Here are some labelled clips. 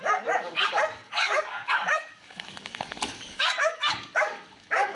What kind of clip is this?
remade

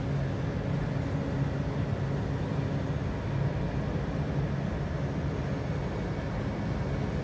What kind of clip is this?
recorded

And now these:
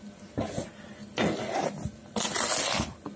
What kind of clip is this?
recorded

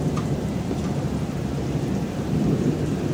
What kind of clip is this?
remade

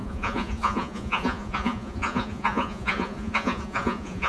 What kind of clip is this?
remade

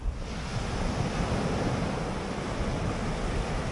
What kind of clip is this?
recorded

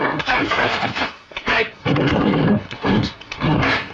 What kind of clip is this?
remade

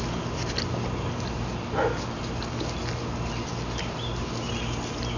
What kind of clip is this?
recorded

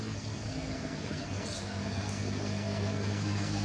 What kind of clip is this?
remade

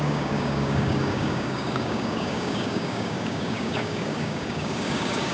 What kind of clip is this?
remade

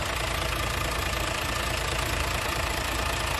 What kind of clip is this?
remade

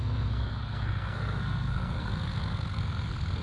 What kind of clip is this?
remade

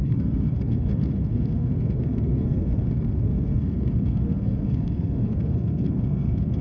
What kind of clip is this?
remade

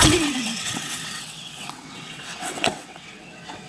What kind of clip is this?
remade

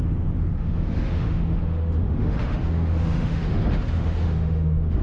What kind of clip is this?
remade